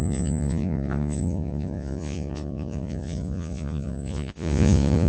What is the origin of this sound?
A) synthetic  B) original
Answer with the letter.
A